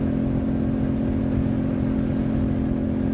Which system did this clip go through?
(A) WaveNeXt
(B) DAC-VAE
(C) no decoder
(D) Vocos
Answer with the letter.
C